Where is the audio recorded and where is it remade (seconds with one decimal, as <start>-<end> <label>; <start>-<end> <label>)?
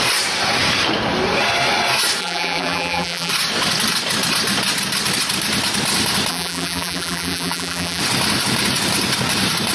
0.0-2.2 recorded; 2.2-3.3 remade; 3.3-6.3 recorded; 6.3-8.0 remade; 8.0-9.7 recorded